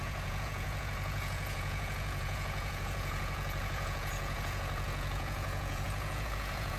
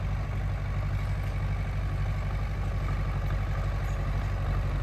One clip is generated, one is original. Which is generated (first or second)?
first